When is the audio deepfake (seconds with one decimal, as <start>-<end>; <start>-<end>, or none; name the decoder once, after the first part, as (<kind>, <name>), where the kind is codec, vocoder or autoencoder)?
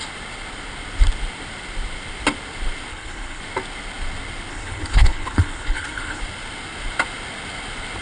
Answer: 2.9-3.4 (codec, HILCodec); 4.5-6.2